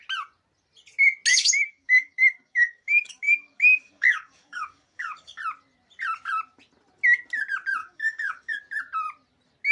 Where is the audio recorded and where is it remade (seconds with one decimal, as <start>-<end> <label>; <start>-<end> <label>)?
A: 0.0-1.3 recorded; 1.3-5.4 remade; 5.4-7.8 recorded; 7.8-8.6 remade; 8.6-9.7 recorded